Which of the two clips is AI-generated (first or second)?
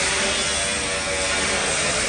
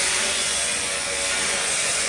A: second